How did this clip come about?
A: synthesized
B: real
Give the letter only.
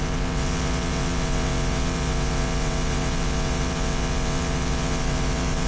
A